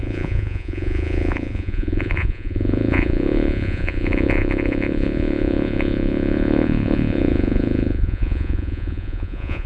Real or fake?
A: fake